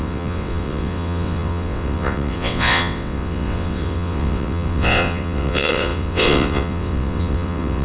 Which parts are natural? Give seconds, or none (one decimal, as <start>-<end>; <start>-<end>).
none